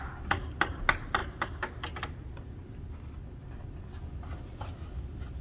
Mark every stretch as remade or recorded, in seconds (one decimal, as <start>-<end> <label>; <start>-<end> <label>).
0.0-5.4 recorded